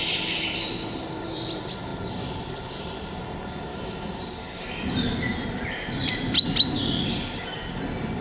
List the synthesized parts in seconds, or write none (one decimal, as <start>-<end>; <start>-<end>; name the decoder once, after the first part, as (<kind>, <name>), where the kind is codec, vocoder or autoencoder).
3.7-4.2 (autoencoder, DAC-VAE)